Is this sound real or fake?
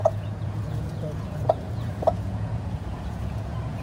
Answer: fake